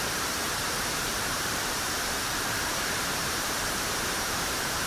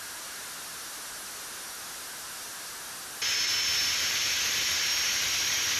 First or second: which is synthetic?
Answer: first